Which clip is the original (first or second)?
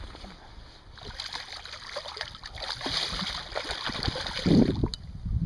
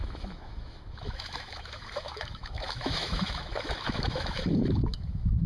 first